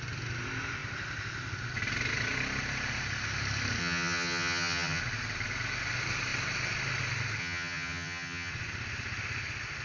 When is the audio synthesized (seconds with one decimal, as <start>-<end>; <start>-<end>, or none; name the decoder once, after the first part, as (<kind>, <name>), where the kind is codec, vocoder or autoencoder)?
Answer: 3.8-5.0 (vocoder, HiFi-GAN); 7.4-8.5